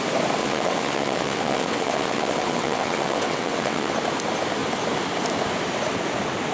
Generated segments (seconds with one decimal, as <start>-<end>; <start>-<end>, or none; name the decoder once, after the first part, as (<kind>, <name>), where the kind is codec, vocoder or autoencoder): 0.4-3.9 (vocoder, WaveNeXt)